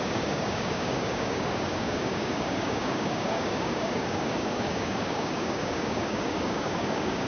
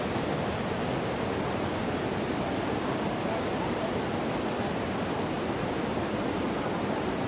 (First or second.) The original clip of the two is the second